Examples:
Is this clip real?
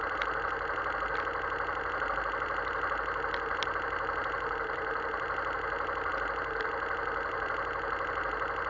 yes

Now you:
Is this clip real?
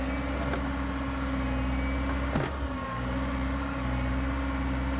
yes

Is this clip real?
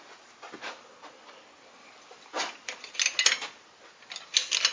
yes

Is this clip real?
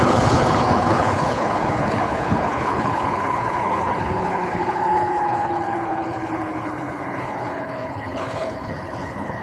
no